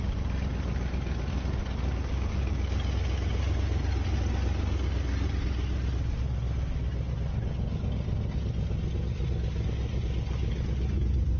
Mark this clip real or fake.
real